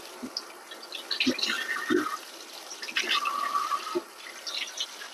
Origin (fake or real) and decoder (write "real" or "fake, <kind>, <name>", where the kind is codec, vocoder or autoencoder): real